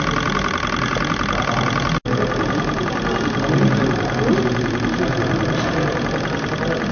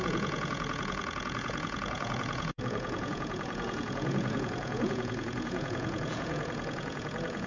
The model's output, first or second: second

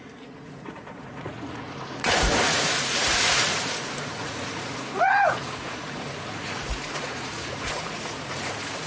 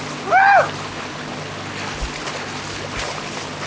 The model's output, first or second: first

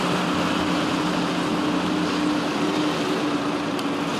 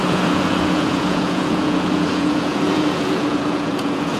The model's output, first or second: second